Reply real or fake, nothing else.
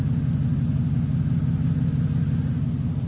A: real